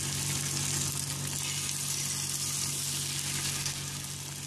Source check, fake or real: real